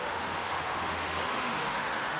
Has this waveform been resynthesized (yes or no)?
yes